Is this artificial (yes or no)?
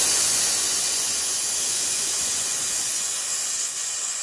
yes